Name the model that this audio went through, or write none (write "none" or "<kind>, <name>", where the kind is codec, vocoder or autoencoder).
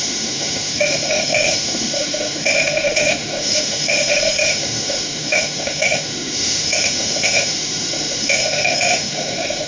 autoencoder, DAC-VAE